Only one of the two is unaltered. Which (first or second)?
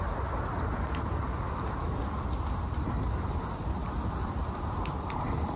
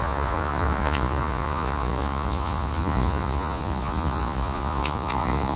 first